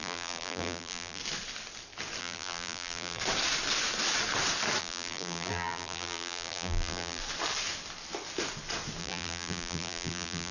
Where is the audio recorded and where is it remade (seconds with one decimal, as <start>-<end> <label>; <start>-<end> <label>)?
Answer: 0.0-1.2 remade; 1.2-2.2 recorded; 2.2-3.2 remade; 3.2-4.8 recorded; 4.8-7.2 remade; 7.2-9.0 recorded; 9.0-10.5 remade